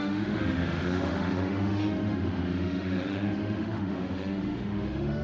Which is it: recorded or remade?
remade